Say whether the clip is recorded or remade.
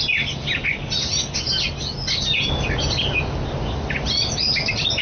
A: recorded